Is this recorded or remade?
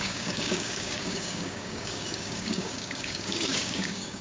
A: remade